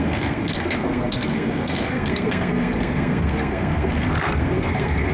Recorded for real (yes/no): no